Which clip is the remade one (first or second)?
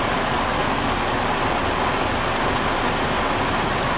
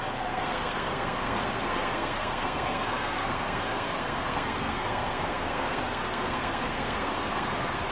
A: second